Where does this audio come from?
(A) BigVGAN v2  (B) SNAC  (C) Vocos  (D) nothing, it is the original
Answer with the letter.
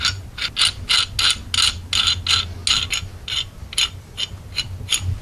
D